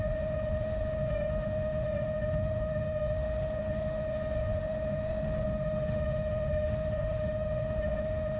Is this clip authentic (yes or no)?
no